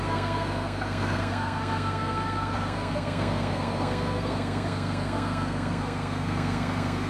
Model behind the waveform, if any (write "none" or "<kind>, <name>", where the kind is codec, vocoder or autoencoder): codec, SNAC